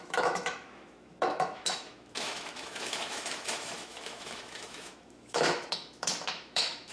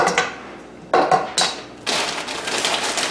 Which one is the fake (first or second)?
first